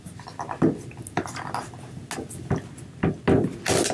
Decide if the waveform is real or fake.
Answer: real